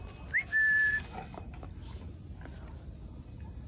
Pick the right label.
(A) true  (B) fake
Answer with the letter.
A